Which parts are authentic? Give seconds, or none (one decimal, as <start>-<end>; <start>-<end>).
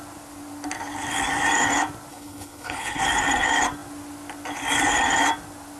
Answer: 0.0-2.1; 3.0-5.8